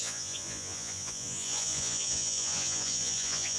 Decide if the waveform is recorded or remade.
remade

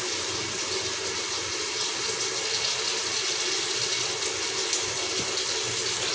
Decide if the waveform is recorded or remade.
recorded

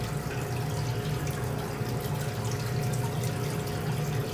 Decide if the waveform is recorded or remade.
recorded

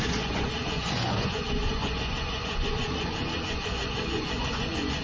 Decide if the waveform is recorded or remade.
remade